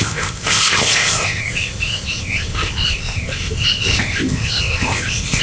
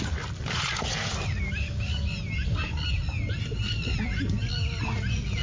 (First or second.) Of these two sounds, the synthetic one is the first